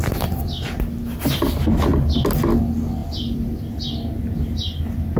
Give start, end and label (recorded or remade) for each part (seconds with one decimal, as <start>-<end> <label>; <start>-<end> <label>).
0.0-5.2 recorded